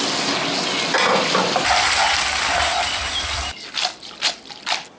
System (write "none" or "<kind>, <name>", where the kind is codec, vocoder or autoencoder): none